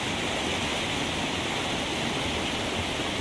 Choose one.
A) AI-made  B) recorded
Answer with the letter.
B